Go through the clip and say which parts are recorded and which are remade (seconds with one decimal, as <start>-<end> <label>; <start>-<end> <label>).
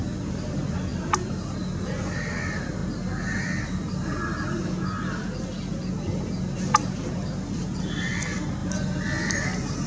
0.0-0.9 remade; 0.9-1.8 recorded; 1.8-2.8 remade; 2.8-7.1 recorded; 7.1-8.6 remade; 8.6-9.9 recorded